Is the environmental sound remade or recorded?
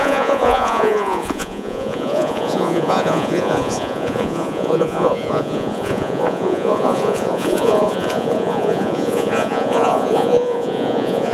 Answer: remade